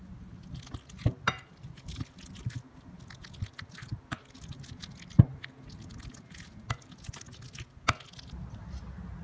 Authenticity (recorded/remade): recorded